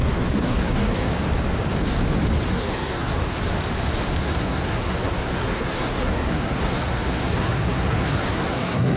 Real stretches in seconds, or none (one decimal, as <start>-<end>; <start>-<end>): 1.1-2.5; 3.2-4.2